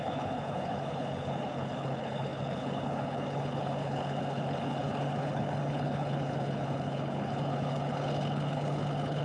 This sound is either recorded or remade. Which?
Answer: remade